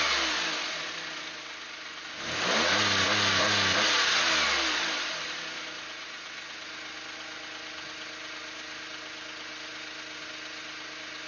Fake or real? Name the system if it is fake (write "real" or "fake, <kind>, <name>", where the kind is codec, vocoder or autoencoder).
real